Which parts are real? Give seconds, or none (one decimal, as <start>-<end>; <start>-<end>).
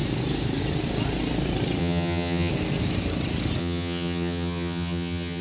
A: 0.0-1.8; 2.5-3.6